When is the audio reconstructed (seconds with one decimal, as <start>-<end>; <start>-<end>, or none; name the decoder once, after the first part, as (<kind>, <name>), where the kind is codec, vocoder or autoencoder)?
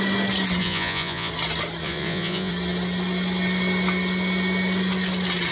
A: 0.6-1.3 (vocoder, Vocos); 1.8-2.5